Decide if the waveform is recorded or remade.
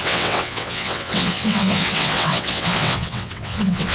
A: remade